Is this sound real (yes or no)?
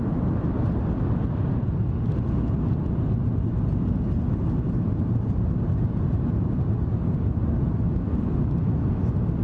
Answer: yes